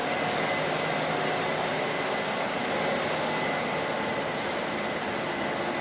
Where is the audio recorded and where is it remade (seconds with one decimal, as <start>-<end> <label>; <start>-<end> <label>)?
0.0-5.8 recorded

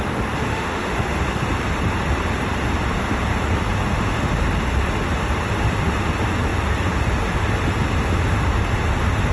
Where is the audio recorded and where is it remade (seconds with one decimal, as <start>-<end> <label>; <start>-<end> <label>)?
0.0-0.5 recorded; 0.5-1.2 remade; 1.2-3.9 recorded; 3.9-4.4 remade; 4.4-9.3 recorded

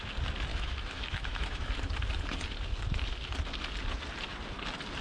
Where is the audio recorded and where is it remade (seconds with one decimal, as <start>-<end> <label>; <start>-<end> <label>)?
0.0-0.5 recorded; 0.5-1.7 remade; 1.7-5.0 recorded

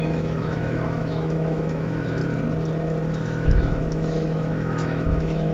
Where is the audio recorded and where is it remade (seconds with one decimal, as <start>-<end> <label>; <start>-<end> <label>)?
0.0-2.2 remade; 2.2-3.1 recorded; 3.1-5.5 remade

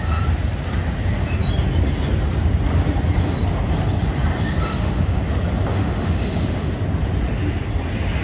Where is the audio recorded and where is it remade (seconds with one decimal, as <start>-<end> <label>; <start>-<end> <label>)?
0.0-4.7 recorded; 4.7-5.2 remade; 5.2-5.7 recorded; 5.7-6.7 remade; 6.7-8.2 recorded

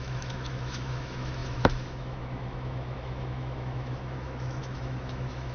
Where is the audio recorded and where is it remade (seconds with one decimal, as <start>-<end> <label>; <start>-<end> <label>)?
0.0-5.5 remade